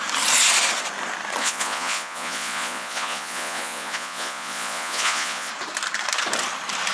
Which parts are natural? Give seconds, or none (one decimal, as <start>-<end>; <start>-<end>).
0.0-1.4; 5.5-6.9